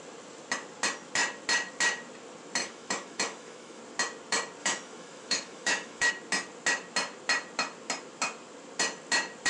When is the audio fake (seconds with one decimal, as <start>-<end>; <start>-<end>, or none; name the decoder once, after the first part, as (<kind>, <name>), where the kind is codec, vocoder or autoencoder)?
2.6-3.8 (autoencoder, DAC-VAE); 4.6-6.1